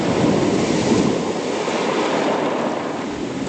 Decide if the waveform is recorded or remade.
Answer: recorded